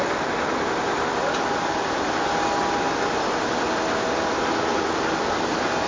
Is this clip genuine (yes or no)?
yes